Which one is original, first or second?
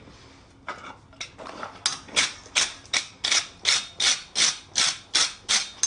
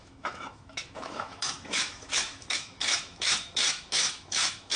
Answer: first